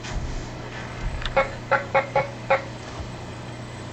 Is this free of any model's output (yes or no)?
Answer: no